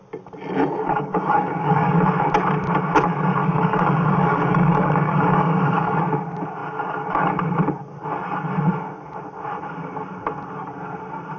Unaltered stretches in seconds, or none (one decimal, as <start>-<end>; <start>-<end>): 0.0-0.9; 2.0-3.4; 6.0-11.4